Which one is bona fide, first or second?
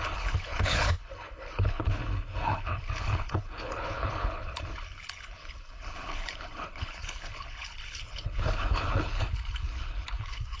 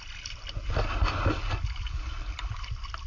second